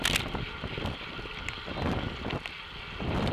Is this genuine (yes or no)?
yes